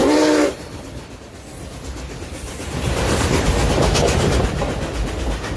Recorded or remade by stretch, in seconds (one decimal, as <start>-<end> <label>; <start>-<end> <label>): 0.0-5.6 recorded